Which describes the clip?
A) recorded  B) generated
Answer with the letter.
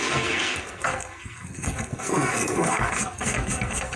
B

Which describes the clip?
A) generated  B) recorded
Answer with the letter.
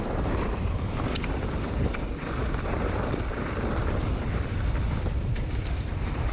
A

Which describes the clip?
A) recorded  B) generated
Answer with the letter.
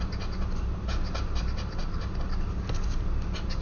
A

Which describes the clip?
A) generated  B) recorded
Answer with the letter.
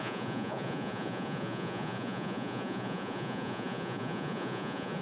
A